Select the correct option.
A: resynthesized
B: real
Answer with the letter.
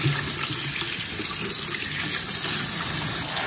B